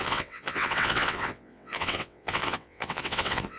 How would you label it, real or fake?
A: fake